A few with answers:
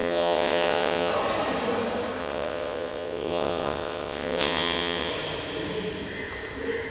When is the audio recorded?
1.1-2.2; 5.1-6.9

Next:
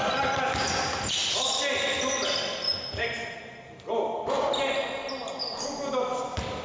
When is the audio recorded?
0.0-6.6

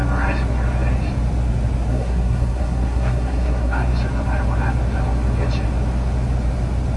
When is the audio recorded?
0.0-1.9; 3.9-7.0

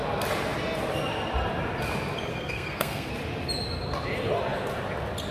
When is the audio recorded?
0.0-2.3; 3.1-5.3

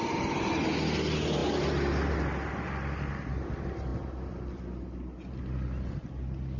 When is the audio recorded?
0.0-6.6

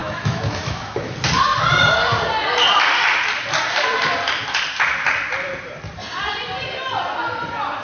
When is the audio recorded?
1.1-7.8

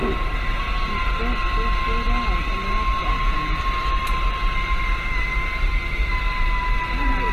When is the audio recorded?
0.0-3.0; 3.6-7.3